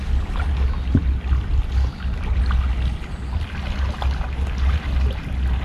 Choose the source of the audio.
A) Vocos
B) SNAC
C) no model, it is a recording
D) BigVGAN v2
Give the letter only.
C